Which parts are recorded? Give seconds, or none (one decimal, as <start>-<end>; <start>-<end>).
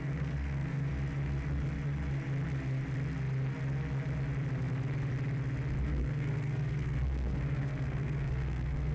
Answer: 0.9-5.8